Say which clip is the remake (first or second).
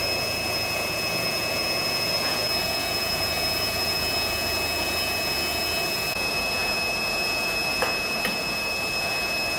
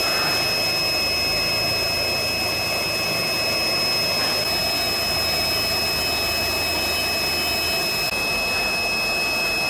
first